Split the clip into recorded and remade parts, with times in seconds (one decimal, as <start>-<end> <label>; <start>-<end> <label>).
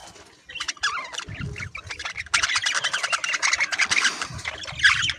0.0-1.9 recorded; 1.9-5.2 remade